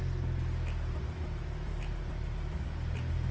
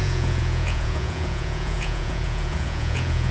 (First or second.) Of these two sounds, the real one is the first